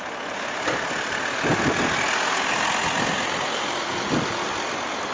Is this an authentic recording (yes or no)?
yes